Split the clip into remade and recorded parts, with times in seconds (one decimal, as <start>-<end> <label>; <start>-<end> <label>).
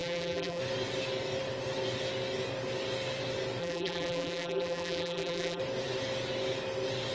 0.0-0.6 remade; 0.6-3.6 recorded; 3.6-5.6 remade; 5.6-7.1 recorded